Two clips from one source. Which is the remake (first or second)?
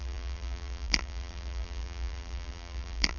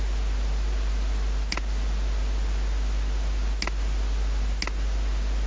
first